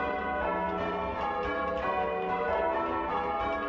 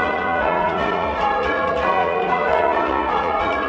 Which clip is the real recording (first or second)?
first